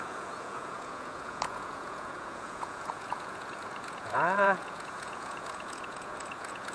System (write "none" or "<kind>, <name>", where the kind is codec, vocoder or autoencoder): vocoder, Vocos